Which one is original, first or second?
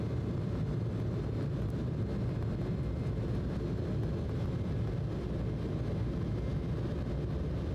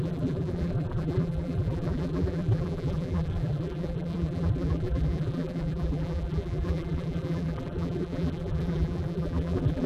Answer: first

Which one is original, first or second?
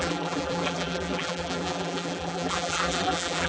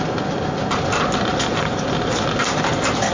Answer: second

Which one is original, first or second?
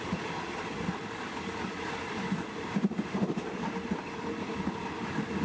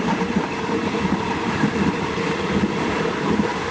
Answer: first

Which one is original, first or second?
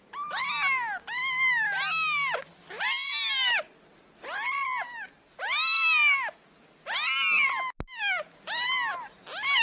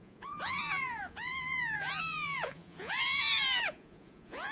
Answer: first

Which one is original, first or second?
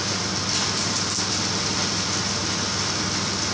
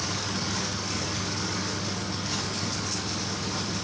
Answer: first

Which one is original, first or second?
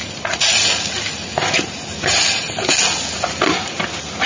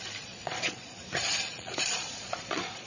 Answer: first